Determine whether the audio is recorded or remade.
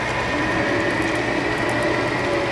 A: recorded